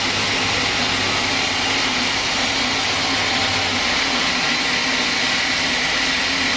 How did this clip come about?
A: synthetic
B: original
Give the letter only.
B